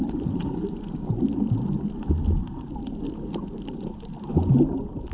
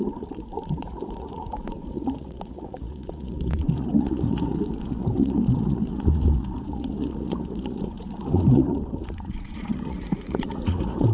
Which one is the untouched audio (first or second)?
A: first